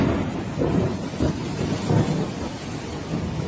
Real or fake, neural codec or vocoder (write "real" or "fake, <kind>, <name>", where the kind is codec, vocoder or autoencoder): real